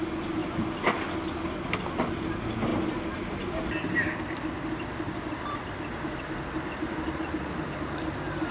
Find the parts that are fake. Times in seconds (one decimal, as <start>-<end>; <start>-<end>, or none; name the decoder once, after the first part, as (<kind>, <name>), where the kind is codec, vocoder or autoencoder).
2.7-7.6 (vocoder, BigVGAN v2)